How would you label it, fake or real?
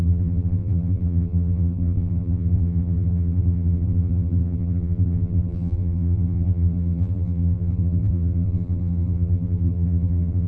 fake